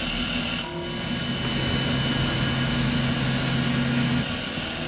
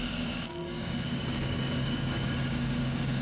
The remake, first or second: second